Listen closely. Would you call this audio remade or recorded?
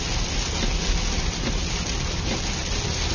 recorded